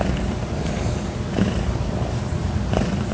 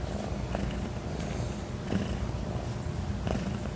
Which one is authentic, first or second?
second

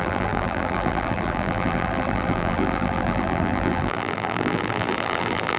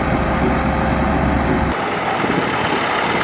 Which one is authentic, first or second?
second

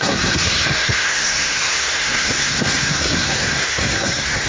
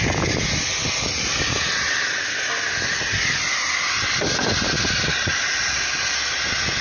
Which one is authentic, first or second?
second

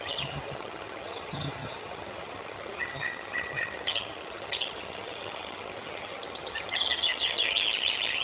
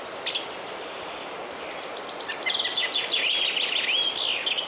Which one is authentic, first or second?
second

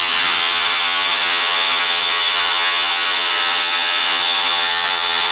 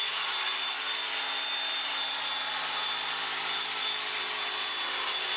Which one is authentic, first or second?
second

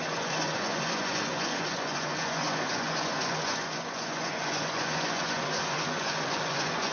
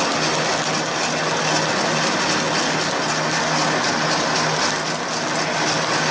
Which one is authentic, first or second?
second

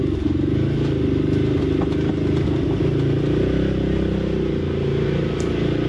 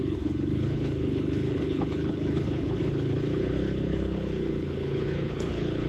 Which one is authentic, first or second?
first